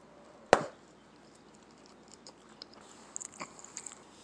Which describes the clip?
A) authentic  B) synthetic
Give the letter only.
A